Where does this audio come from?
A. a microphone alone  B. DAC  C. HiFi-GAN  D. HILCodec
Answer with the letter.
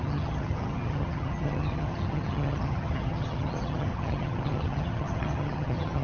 C